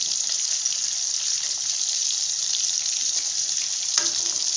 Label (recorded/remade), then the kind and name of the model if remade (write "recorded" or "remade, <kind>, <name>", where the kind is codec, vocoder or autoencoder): recorded